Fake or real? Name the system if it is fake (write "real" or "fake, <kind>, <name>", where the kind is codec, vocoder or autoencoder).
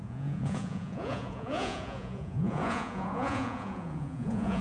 fake, vocoder, Vocos